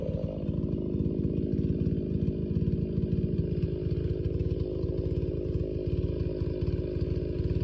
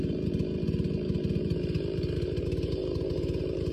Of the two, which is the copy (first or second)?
second